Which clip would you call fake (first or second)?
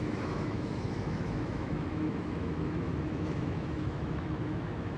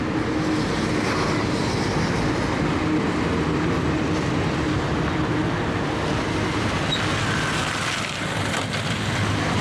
first